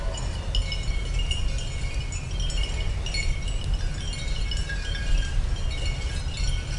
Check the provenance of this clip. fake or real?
real